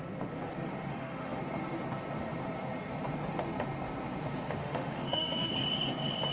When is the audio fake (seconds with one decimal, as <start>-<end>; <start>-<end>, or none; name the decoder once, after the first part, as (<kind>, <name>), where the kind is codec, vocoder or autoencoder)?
0.9-1.4 (autoencoder, DAC-VAE); 4.6-5.5